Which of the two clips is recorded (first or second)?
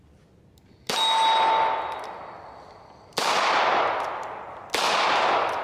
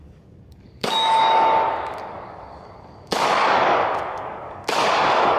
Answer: first